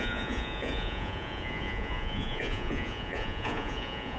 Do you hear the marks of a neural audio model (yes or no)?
yes